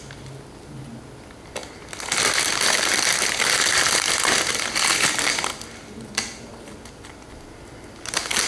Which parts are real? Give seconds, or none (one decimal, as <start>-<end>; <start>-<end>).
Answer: 0.0-8.5